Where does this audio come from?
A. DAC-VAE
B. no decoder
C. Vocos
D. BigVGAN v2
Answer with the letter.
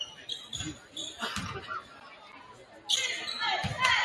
B